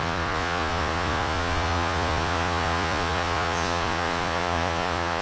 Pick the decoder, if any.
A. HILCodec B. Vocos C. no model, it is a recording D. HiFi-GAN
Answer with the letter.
B